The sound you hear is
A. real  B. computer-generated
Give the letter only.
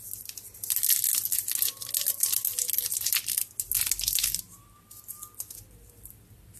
A